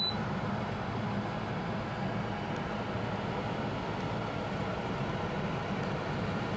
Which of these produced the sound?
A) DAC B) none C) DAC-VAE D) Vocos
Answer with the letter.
B